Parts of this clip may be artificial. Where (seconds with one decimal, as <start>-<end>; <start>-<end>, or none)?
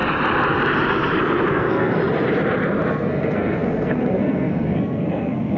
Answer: 1.5-2.0; 2.9-5.6